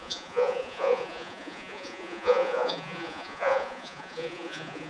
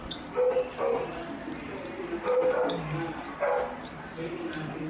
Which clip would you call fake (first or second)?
first